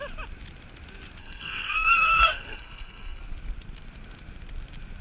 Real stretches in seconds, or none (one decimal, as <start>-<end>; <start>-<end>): 0.0-1.2; 3.2-5.0